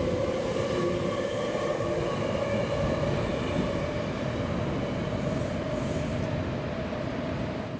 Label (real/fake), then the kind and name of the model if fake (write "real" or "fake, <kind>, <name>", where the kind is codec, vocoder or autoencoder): real